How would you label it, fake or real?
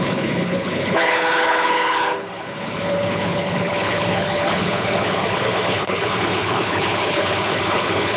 fake